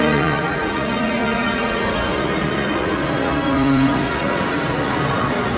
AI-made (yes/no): yes